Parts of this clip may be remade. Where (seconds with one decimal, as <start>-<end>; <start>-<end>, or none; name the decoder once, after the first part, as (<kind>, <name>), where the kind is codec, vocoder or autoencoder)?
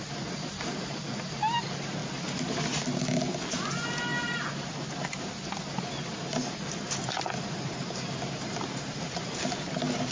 none